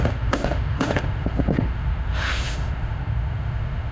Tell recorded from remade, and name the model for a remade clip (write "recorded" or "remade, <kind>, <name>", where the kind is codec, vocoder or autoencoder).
remade, autoencoder, DAC-VAE